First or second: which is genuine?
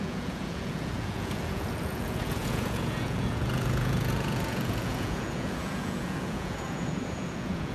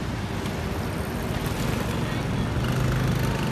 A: second